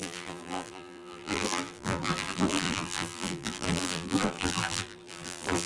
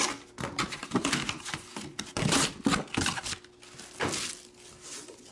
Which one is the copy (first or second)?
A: first